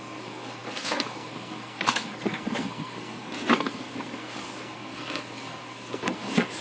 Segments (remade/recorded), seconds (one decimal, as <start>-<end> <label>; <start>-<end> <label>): 0.0-6.6 remade